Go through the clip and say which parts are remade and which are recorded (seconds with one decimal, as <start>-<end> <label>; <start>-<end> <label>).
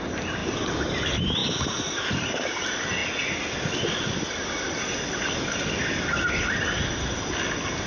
0.0-7.9 recorded